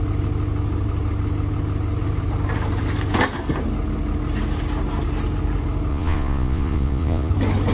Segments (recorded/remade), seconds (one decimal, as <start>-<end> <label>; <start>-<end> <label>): 0.0-5.9 recorded; 5.9-7.3 remade; 7.3-7.7 recorded